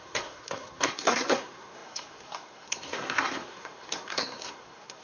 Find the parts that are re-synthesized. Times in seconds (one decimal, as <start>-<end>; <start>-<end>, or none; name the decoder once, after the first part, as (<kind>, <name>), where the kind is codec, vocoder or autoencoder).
0.0-5.0 (codec, SNAC)